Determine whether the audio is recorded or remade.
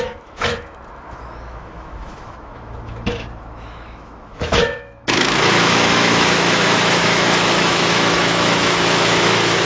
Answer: remade